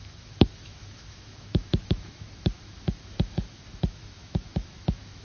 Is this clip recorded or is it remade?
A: remade